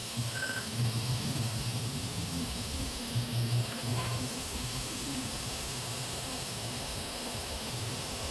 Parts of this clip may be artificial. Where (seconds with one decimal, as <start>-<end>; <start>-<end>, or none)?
0.0-8.3